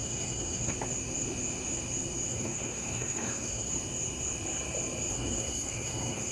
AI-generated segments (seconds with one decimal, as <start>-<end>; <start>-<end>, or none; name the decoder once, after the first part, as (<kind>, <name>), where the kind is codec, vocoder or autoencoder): 0.0-0.7 (codec, SNAC); 2.3-3.7; 5.1-6.3